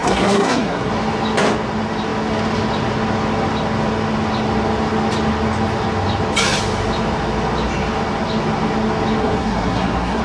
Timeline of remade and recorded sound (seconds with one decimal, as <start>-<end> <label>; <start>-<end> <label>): 0.0-0.9 remade; 0.9-9.2 recorded; 9.2-10.2 remade